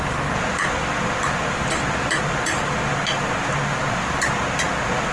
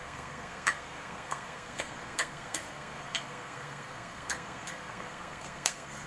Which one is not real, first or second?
second